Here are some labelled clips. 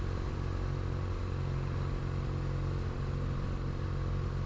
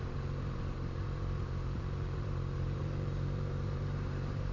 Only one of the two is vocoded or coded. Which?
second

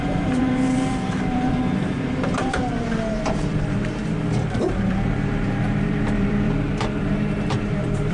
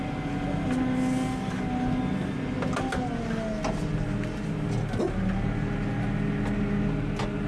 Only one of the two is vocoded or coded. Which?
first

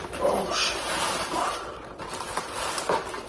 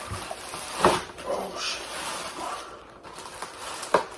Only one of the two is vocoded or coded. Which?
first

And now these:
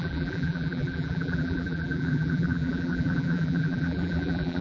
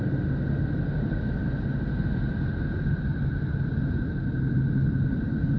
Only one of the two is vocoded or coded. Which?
first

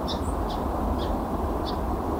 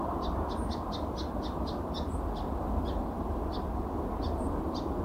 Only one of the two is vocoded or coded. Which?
first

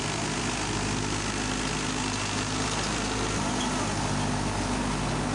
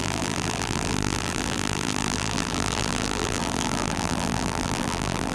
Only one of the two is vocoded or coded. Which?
second